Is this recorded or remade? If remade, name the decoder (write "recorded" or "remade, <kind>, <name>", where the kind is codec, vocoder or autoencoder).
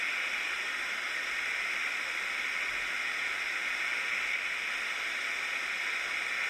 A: recorded